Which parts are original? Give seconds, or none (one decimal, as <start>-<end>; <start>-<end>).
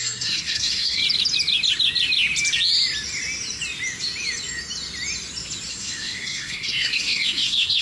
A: 1.0-5.7